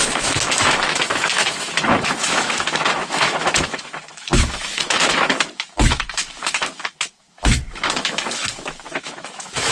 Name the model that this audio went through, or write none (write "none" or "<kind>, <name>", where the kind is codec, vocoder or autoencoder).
autoencoder, DAC-VAE